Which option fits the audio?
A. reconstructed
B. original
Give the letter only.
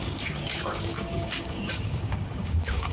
A